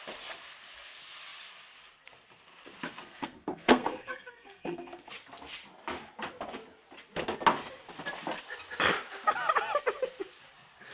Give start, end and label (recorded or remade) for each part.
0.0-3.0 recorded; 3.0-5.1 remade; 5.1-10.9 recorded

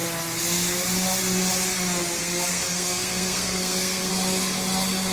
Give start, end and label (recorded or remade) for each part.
0.0-2.2 recorded; 2.2-4.1 remade; 4.1-5.1 recorded

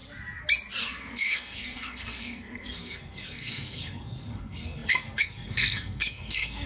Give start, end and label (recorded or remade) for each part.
0.0-0.8 recorded; 0.8-6.7 remade

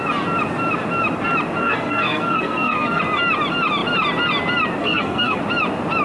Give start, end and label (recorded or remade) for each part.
0.0-1.6 recorded; 1.6-3.0 remade; 3.0-4.8 recorded; 4.8-5.4 remade; 5.4-6.0 recorded

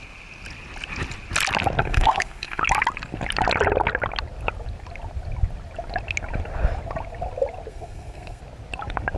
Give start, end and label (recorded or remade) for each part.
0.0-1.8 recorded; 1.8-2.6 remade; 2.6-7.7 recorded; 7.7-8.4 remade; 8.4-9.2 recorded